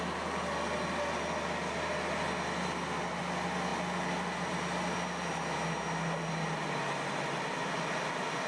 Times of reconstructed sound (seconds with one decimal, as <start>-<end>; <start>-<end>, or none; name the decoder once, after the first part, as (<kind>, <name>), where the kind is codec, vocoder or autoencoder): none